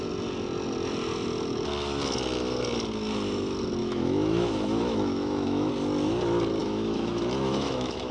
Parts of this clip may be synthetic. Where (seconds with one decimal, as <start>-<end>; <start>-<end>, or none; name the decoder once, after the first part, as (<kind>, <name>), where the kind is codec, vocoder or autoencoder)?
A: 3.8-5.7 (autoencoder, DAC-VAE); 6.6-8.1